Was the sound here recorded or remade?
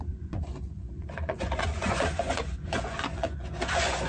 remade